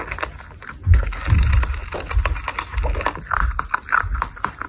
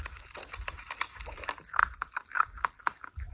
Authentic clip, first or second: first